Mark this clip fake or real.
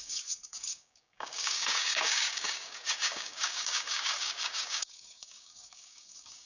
fake